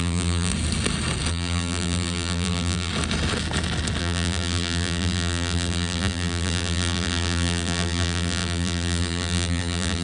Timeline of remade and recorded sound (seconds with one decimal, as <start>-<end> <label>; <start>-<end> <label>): 0.0-0.5 remade; 0.5-1.3 recorded; 1.3-2.9 remade; 2.9-4.0 recorded; 4.0-10.0 remade